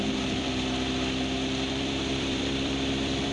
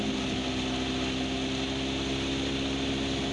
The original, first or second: second